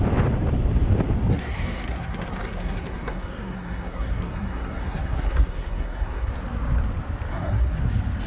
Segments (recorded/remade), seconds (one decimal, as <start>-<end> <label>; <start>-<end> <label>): 0.0-1.3 recorded; 1.3-6.3 remade; 6.3-7.3 recorded; 7.3-7.8 remade; 7.8-8.3 recorded

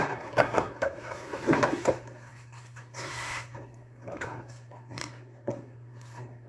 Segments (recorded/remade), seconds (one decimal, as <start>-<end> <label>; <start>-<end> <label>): 0.0-6.5 remade

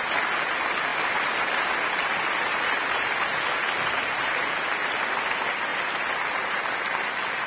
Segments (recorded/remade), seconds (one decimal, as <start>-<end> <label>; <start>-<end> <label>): 0.0-7.5 recorded